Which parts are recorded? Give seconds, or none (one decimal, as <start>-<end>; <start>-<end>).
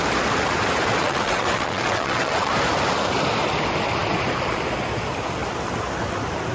0.0-1.0; 2.5-6.5